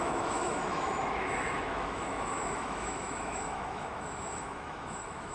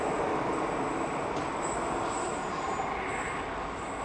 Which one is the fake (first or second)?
first